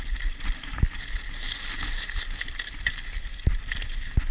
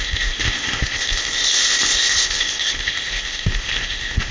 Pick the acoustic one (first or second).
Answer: first